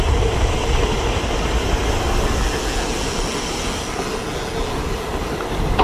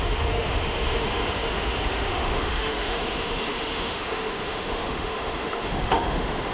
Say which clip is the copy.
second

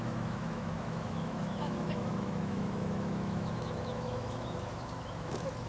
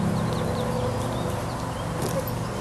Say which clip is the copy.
first